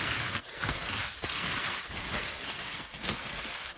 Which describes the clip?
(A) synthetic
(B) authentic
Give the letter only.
A